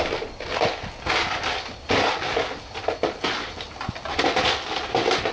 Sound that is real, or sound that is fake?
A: real